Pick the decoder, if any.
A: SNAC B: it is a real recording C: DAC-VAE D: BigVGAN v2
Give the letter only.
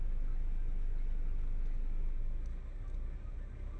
B